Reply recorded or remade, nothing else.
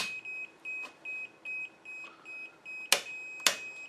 recorded